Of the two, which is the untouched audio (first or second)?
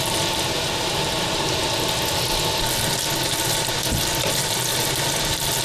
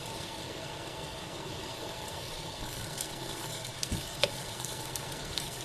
first